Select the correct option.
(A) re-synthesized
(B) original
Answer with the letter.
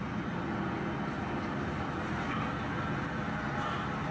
B